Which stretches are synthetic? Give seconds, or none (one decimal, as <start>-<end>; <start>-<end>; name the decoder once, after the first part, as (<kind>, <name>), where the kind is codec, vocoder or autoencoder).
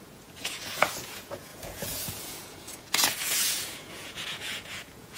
0.0-5.2 (vocoder, Vocos)